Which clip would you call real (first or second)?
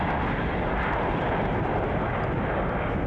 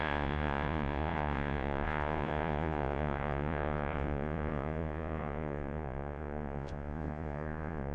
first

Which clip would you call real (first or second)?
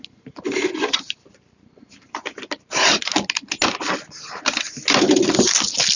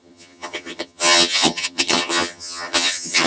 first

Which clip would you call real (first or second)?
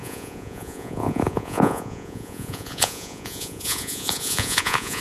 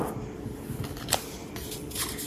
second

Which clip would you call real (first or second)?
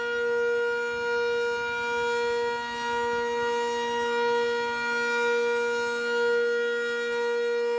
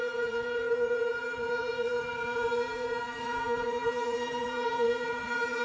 first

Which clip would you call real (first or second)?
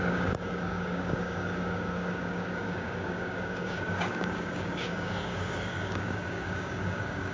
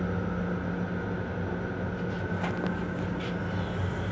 second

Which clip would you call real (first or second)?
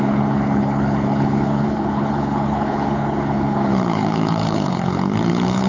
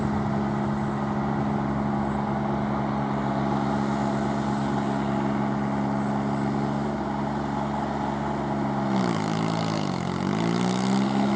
second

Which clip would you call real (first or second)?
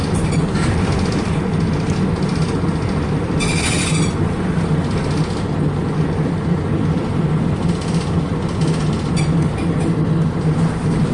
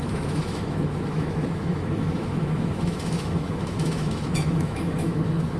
first